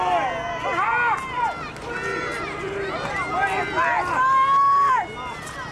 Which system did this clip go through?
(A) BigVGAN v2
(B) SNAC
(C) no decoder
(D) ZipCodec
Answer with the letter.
C